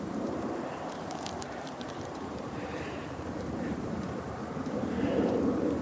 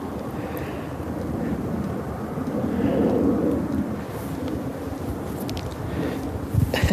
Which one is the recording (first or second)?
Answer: second